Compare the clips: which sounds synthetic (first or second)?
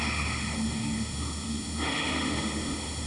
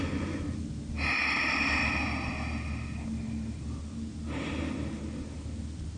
first